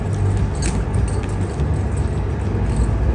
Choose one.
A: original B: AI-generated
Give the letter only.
A